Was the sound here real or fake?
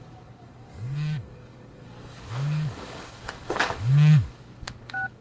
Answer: fake